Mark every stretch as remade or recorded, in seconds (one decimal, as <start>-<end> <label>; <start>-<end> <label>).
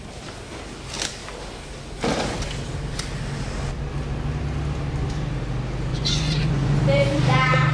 0.0-5.9 recorded; 5.9-6.8 remade; 6.8-7.7 recorded